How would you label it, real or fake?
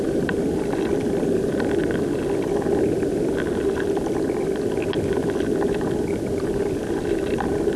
real